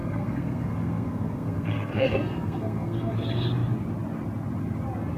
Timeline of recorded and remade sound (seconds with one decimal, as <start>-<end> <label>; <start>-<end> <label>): 0.0-3.1 remade; 3.1-5.2 recorded